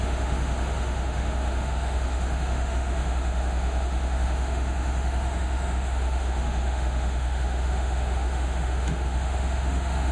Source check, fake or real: fake